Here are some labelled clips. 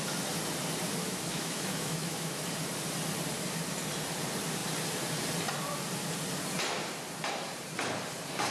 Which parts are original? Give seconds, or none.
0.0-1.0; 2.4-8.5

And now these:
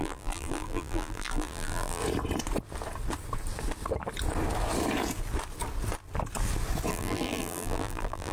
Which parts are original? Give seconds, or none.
2.0-6.9

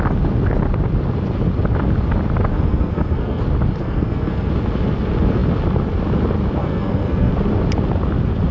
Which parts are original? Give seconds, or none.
0.0-2.5; 3.4-3.8; 4.5-6.6; 7.3-8.5